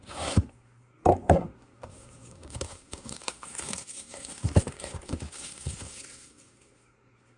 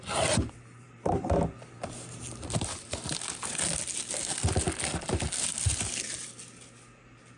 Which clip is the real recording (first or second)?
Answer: second